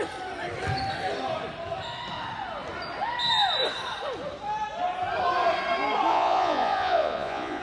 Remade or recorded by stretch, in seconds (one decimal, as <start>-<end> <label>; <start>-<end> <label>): 0.0-6.1 recorded; 6.1-7.6 remade